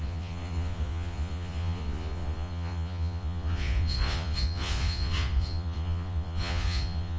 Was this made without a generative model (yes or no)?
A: no